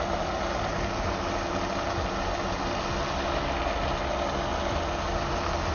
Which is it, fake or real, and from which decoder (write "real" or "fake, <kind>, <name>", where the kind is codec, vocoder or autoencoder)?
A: real